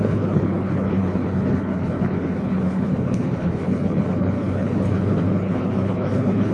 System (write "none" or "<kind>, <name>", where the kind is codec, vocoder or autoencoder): codec, HILCodec